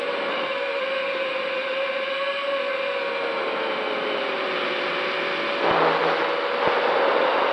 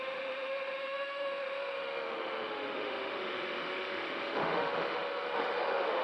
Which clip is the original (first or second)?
first